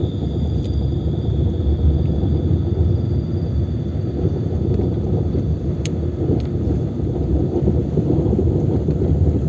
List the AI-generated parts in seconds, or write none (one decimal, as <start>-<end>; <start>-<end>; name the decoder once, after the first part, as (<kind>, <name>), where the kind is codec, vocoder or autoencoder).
0.0-2.8 (vocoder, BigVGAN v2); 3.7-9.5